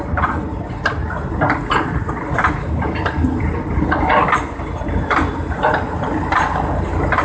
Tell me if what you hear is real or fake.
real